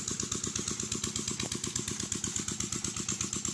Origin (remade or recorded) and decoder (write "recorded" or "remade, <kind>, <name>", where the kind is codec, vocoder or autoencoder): recorded